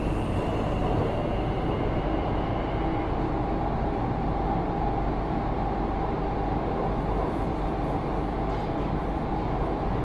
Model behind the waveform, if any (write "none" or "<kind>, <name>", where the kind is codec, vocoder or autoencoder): none